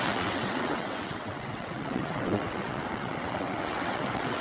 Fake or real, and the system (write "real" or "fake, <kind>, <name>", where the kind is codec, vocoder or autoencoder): fake, vocoder, WaveNeXt